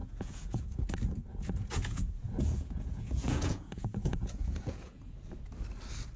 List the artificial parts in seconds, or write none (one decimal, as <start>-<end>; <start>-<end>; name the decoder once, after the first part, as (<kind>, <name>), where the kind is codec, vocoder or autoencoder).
0.0-0.8 (vocoder, Vocos); 1.3-5.0